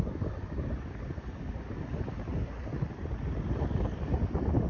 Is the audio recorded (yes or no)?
yes